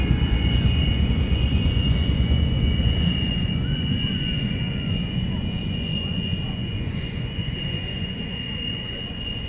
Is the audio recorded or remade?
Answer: remade